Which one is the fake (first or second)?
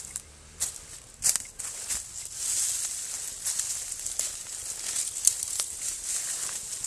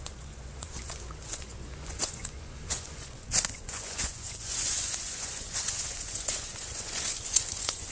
second